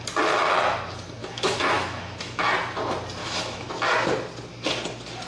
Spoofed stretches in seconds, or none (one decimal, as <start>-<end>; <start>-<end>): 1.2-2.4; 3.2-3.7